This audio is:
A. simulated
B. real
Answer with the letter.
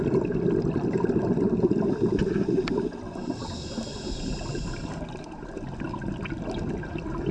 B